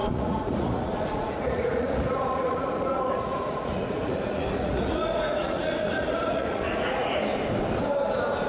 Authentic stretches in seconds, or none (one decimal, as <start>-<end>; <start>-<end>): 7.2-8.5